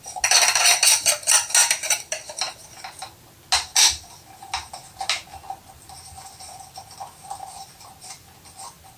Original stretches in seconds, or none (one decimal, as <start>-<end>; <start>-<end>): 0.0-9.0